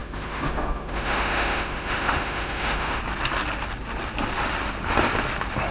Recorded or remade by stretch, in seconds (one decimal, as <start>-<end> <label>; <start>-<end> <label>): 0.0-3.0 remade; 3.0-5.7 recorded